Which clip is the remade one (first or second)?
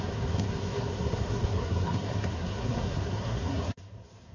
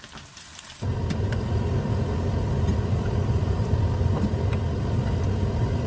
first